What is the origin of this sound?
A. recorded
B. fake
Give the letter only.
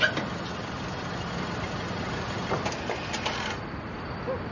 A